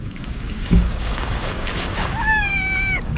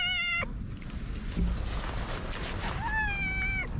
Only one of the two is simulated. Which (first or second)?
first